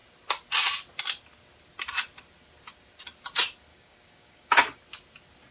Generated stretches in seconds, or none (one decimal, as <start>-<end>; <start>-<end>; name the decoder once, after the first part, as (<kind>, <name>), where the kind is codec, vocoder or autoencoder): 3.7-4.8 (codec, DAC)